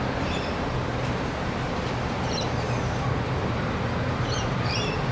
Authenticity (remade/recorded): remade